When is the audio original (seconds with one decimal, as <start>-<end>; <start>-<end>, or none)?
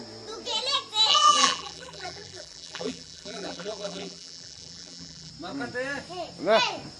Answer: 0.0-1.1; 5.3-7.0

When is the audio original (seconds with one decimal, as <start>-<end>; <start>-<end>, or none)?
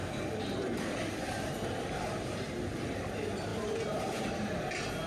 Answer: 0.0-5.1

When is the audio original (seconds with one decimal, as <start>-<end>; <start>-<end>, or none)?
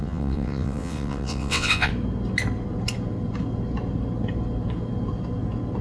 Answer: 1.9-5.8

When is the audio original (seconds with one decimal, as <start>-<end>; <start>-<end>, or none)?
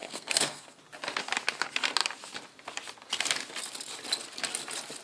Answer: 0.8-5.0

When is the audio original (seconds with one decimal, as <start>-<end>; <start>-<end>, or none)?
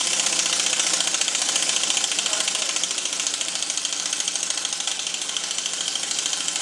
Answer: 0.0-6.6